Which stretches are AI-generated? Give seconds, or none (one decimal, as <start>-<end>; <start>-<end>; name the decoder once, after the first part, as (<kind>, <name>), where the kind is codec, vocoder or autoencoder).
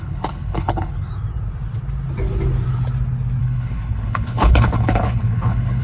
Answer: 0.0-1.1 (codec, HILCodec); 3.4-5.8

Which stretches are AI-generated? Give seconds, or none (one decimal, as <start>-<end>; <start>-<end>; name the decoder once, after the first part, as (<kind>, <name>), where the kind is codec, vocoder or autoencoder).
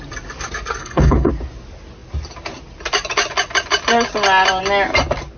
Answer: 0.8-1.3 (codec, HILCodec)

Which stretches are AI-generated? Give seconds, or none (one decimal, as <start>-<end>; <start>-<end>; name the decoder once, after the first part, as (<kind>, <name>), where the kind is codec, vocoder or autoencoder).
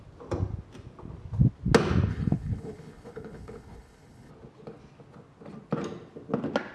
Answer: 2.1-4.3 (codec, HILCodec)